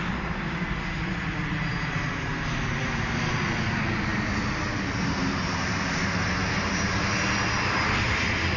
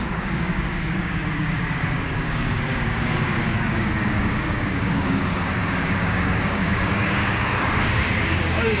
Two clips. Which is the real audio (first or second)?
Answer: first